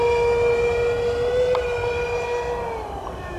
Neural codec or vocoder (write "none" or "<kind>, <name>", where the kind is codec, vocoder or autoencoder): none